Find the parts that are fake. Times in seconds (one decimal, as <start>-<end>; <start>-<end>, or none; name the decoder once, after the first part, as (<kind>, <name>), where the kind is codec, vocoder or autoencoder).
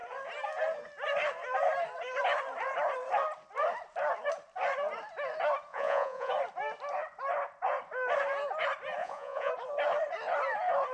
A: 5.7-6.3 (vocoder, Vocos); 9.0-9.5